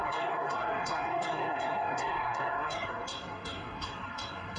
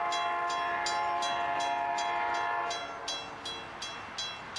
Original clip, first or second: second